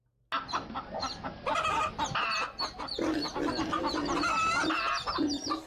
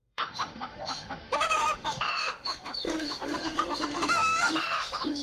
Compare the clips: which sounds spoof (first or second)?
second